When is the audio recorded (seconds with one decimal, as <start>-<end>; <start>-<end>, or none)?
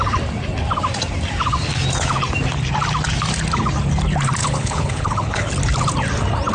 0.0-4.4; 5.5-6.5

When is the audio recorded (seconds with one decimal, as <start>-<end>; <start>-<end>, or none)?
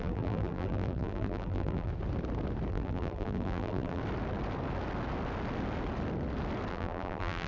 1.9-2.7; 4.0-6.7